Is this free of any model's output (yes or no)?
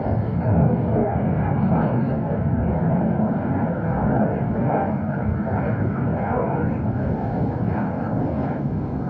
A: no